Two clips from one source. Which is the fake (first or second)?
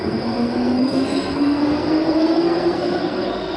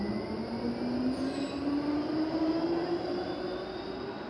first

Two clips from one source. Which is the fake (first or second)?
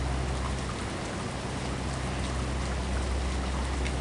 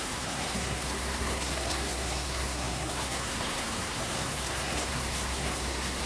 second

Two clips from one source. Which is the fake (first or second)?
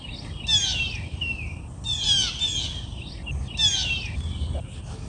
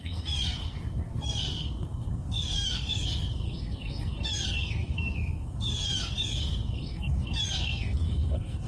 second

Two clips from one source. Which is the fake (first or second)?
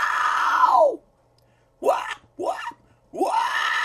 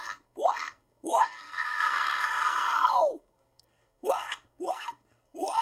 second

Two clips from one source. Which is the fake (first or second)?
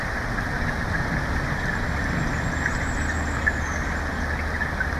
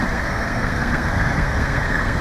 second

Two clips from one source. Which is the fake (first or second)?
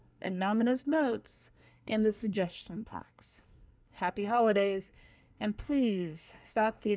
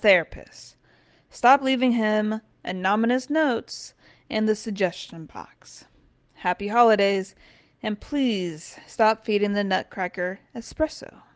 first